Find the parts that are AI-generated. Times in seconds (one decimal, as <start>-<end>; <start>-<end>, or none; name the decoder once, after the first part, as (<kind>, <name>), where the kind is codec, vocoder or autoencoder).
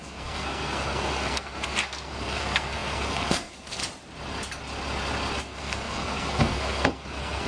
0.0-3.8 (codec, SNAC); 5.4-7.5